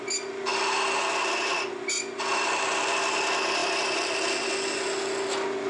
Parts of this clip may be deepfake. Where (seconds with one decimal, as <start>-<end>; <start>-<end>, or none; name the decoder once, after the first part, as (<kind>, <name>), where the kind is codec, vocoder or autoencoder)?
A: none

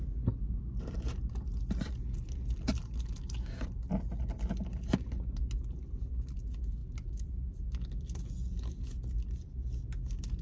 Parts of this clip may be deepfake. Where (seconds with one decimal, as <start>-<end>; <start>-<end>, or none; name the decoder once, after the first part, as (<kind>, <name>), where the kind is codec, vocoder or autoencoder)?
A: none

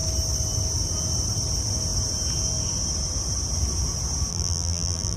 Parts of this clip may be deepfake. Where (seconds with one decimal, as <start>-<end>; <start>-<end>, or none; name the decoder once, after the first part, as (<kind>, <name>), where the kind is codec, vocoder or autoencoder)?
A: 4.3-5.2 (vocoder, BigVGAN v2)

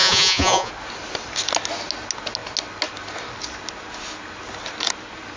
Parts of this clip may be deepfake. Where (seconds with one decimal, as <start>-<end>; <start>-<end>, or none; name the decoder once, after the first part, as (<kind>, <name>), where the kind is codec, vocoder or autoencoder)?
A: 0.0-0.7 (vocoder, Vocos)

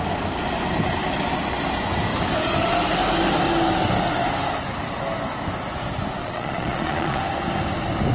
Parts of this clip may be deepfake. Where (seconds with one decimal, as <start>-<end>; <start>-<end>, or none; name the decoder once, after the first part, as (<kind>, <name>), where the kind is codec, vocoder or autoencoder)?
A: 6.2-7.2 (vocoder, Vocos)

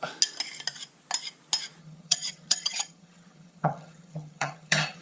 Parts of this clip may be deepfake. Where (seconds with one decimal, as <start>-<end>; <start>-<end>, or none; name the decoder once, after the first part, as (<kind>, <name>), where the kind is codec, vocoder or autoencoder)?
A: 1.8-5.0 (vocoder, HiFi-GAN)

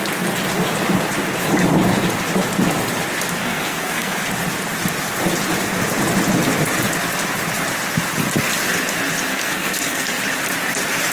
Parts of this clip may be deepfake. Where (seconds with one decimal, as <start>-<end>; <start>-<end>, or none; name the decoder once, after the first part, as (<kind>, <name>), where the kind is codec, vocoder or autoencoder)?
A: 3.4-4.2 (codec, SNAC); 9.3-10.2